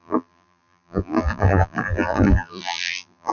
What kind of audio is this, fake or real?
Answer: fake